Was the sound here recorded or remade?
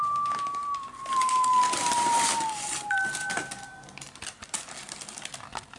recorded